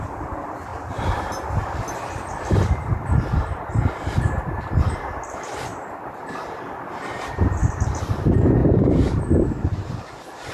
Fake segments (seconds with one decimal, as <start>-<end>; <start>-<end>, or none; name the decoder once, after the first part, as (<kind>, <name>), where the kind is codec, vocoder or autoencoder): 8.6-9.2 (vocoder, BigVGAN v2)

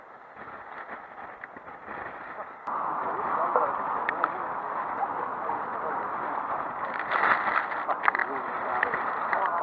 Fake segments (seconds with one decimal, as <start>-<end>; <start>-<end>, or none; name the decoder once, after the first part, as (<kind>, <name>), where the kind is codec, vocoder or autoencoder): 8.2-9.6 (vocoder, BigVGAN v2)

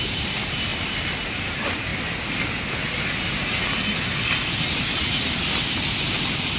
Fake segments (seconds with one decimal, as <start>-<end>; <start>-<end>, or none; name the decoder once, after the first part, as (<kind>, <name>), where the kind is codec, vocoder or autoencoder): 0.0-1.9 (vocoder, BigVGAN v2); 5.9-6.6

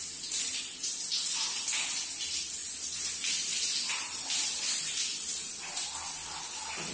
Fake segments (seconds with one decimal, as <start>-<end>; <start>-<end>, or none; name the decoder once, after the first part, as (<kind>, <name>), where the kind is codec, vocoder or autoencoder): 0.5-1.1 (vocoder, BigVGAN v2); 2.6-5.5

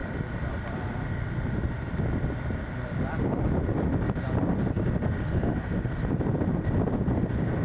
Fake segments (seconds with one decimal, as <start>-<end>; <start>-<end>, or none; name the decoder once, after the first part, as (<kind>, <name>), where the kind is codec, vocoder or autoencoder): 0.0-2.7 (vocoder, BigVGAN v2)

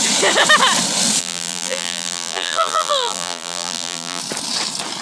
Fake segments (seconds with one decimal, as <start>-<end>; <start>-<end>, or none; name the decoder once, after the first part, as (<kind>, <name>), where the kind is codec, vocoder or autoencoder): 1.2-4.2 (vocoder, BigVGAN v2)

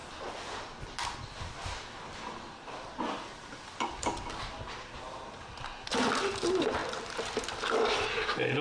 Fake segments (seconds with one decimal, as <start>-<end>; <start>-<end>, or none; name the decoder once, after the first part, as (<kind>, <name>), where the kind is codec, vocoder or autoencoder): 5.0-6.8 (vocoder, BigVGAN v2); 7.6-8.6

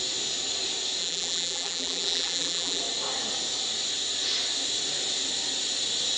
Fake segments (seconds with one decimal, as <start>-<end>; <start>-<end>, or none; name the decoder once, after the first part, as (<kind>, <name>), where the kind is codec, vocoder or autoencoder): 1.0-2.8 (vocoder, BigVGAN v2)